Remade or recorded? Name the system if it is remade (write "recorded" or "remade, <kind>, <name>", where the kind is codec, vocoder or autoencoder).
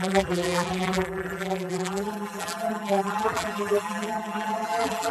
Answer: remade, vocoder, BigVGAN v2